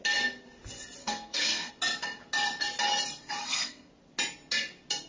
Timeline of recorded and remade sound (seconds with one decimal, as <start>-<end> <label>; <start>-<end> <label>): 0.0-1.0 recorded; 1.0-1.7 remade; 1.7-3.4 recorded; 3.4-3.9 remade; 3.9-5.1 recorded